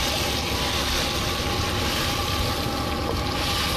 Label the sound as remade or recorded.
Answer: recorded